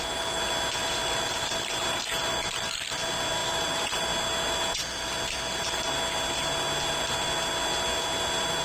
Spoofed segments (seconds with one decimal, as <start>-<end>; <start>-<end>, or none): none